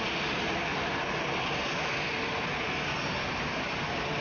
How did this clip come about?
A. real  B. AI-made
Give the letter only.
A